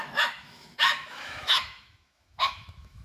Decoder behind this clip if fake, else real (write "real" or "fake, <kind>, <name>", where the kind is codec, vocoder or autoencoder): fake, autoencoder, DAC-VAE